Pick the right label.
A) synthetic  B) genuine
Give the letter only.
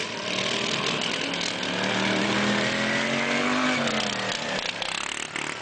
B